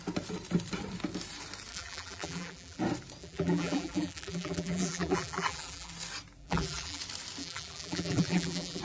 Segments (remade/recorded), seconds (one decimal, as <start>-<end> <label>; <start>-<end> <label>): 0.0-1.7 recorded; 1.7-2.8 remade; 2.8-3.2 recorded; 3.2-5.9 remade; 5.9-6.4 recorded; 6.4-7.0 remade; 7.0-7.4 recorded; 7.4-8.8 remade